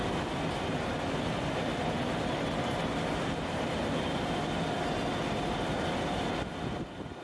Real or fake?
real